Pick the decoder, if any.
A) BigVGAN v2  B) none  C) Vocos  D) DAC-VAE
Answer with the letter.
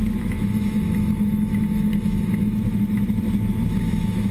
D